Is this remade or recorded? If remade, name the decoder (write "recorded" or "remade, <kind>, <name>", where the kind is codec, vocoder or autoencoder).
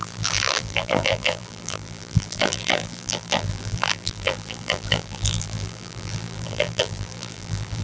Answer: remade, vocoder, BigVGAN v2